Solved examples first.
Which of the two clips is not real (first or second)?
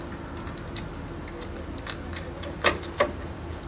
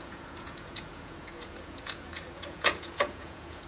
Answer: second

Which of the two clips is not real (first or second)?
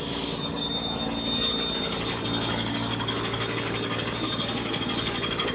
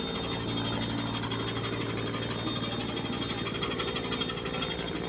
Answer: first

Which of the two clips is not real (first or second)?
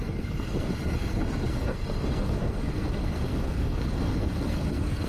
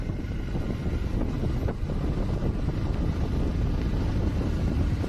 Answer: first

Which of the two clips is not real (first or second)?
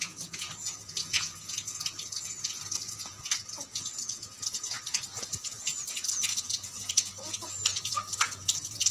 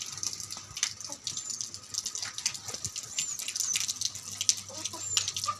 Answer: first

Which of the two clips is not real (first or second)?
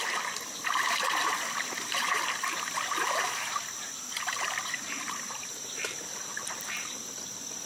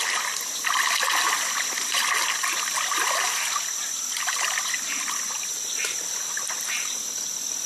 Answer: first